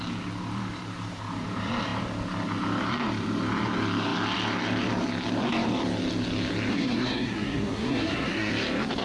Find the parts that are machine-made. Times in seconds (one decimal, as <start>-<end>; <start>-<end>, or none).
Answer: 6.7-8.5